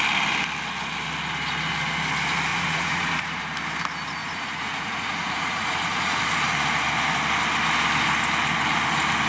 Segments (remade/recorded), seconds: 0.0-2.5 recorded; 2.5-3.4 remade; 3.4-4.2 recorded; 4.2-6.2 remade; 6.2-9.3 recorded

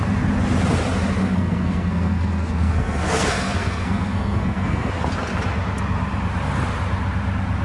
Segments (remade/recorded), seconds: 0.0-1.2 recorded; 1.2-4.9 remade; 4.9-7.6 recorded

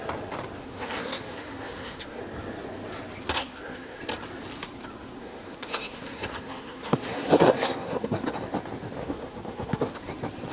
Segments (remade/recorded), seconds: 0.0-0.6 recorded; 0.6-2.2 remade; 2.2-3.4 recorded; 3.4-4.0 remade; 4.0-5.2 recorded; 5.2-8.2 remade; 8.2-9.0 recorded; 9.0-10.1 remade; 10.1-10.5 recorded

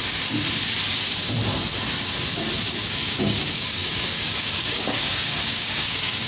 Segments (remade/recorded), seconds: 0.0-2.7 recorded; 2.7-6.3 remade